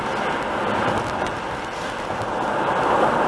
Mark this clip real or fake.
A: fake